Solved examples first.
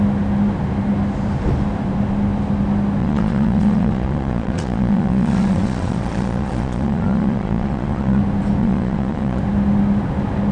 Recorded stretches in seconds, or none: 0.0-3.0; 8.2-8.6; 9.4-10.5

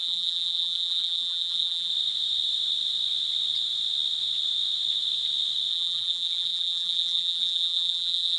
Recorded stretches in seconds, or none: 1.9-5.7

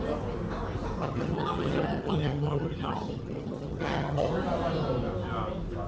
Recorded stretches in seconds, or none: 0.0-1.0; 4.3-5.9

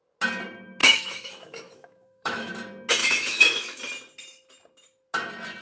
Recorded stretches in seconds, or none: 0.0-0.8; 2.5-3.0; 3.8-5.6

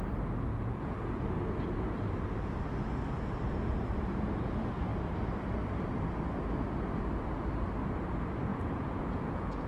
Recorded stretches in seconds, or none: 0.0-0.5; 1.2-8.5

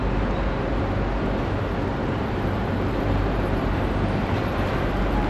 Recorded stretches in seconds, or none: 0.0-1.9

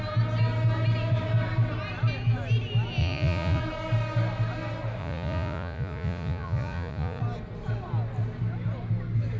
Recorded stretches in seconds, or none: 0.0-3.0; 3.6-5.0; 7.2-9.4

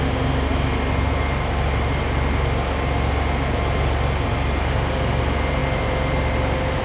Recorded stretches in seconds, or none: 0.0-6.8